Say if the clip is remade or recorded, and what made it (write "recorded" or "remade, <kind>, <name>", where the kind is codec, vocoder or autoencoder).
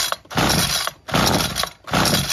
recorded